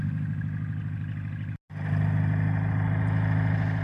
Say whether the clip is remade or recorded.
recorded